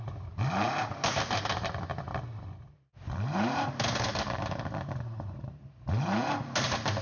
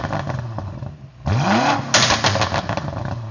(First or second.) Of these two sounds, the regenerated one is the first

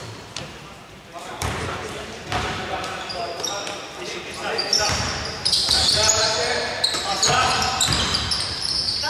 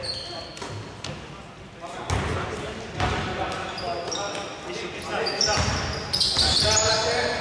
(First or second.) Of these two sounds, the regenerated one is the first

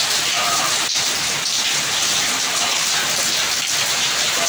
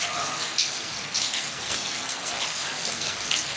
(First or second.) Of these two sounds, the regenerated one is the second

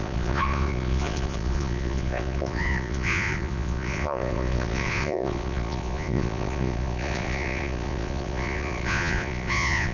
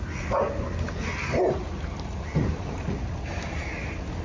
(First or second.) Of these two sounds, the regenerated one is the first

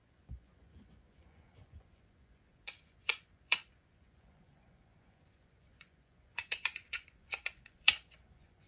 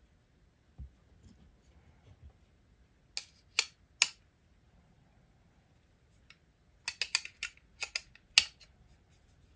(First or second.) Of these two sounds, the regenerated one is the first